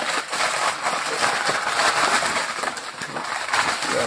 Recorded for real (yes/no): yes